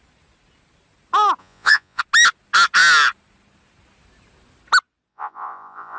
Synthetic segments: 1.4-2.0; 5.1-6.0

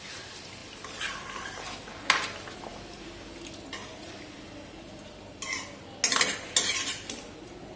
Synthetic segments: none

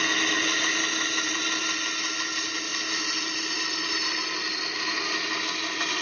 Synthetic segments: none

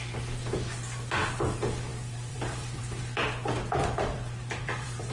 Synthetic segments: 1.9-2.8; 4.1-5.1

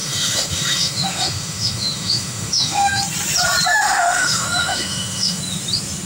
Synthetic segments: 0.0-3.0; 3.7-5.4

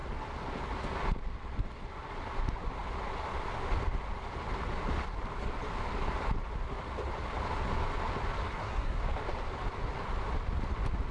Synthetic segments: 8.5-9.0

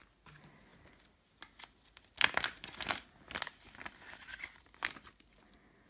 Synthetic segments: none